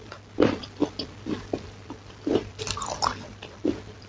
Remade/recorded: recorded